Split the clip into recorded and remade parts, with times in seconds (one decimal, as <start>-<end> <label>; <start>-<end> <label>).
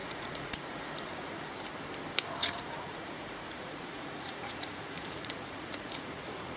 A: 0.0-1.5 remade; 1.5-2.4 recorded; 2.4-6.6 remade